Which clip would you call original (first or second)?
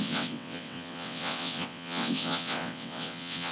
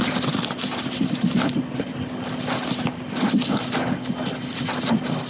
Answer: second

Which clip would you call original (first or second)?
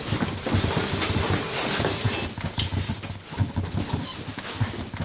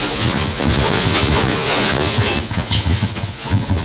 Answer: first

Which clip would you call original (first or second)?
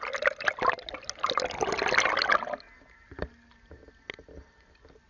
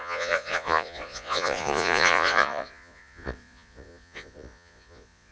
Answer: first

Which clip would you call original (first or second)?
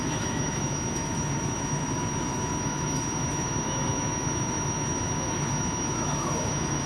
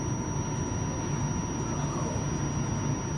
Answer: second